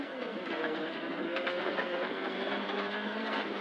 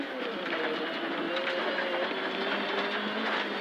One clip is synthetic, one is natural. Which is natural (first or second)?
second